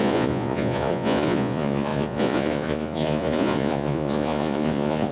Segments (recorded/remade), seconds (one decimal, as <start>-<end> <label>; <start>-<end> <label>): 0.0-5.1 remade